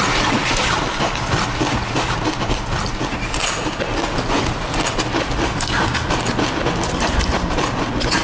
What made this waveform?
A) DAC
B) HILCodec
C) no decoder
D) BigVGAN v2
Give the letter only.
C